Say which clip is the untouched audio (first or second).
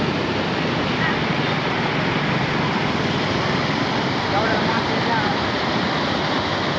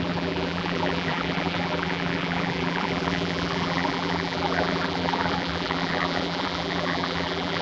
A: first